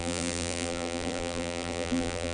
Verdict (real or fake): fake